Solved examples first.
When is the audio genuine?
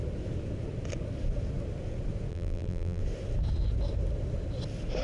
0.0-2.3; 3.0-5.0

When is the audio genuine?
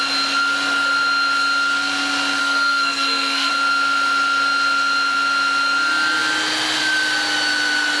0.0-2.4; 3.5-8.0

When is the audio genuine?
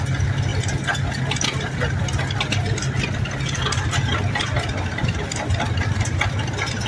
0.0-6.9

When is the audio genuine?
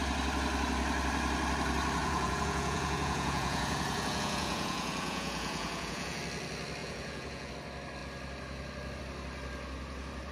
0.0-2.0; 6.2-6.8; 7.5-10.3